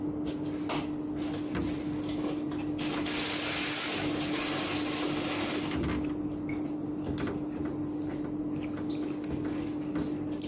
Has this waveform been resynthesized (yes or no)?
no